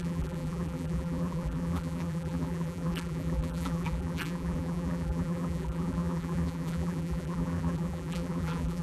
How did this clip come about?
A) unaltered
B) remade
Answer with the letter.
B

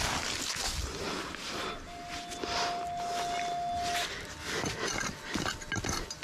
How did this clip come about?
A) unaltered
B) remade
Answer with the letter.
A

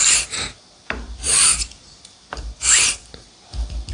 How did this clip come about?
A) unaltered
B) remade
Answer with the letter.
A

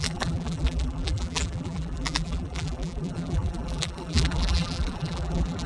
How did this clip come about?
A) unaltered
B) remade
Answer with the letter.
B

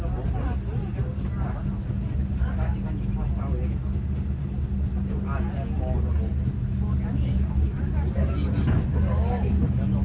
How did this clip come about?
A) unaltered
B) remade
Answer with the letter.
A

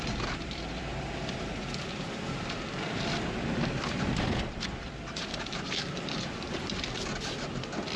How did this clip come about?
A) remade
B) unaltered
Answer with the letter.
A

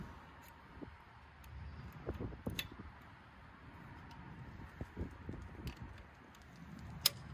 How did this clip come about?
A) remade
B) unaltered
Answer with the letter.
B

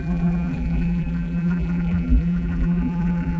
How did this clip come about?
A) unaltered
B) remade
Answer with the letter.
B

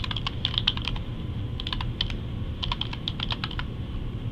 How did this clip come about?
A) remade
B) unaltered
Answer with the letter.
B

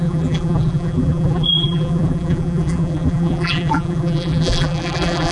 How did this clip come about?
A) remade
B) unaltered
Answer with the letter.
A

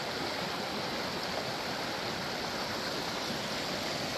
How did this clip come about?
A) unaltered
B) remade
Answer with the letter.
A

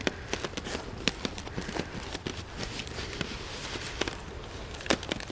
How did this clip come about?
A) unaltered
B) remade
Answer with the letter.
B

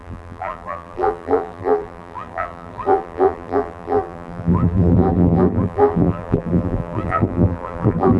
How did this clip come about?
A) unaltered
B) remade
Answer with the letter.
B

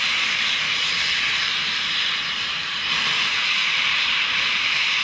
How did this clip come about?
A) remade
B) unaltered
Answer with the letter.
A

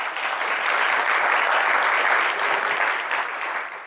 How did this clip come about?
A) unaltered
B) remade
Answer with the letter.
A